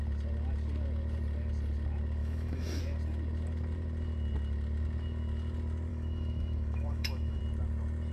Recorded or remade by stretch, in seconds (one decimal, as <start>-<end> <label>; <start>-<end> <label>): 0.0-2.2 recorded; 2.2-2.8 remade; 2.8-5.9 recorded; 5.9-7.4 remade; 7.4-8.1 recorded